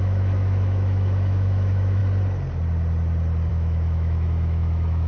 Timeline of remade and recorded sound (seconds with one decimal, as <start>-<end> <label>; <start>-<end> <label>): 0.0-2.0 remade; 2.0-3.5 recorded; 3.5-5.1 remade